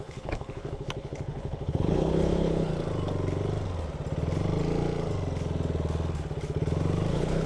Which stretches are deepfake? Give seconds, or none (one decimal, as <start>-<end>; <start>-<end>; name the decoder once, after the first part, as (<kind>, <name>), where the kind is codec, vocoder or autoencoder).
0.0-2.7 (codec, HILCodec); 7.1-7.5